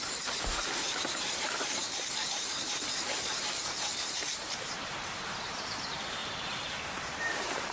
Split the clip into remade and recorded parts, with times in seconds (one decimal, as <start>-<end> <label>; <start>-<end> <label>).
0.0-7.7 remade